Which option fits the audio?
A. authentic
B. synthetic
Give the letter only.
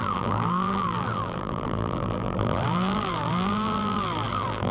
B